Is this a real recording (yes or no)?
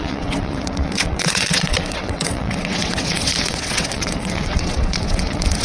no